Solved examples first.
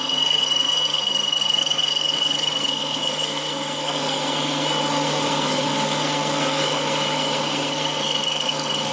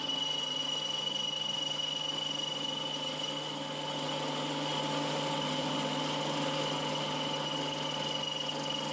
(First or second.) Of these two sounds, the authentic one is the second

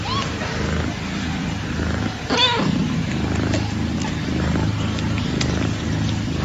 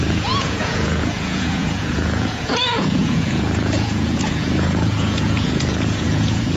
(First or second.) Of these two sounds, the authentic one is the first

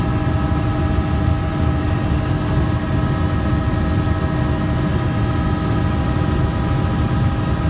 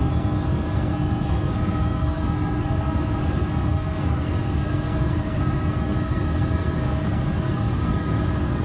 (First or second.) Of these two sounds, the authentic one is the first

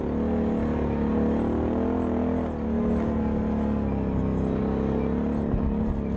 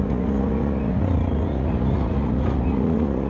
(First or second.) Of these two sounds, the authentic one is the first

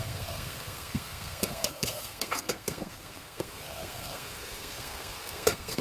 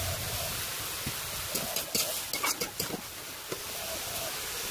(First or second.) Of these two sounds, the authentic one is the second